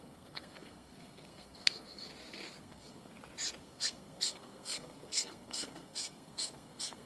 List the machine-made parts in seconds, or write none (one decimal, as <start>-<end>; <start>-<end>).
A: 0.0-2.1; 2.6-3.1; 3.6-7.1